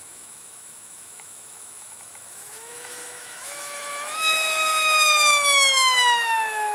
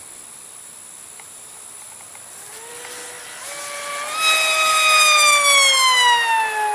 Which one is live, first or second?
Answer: second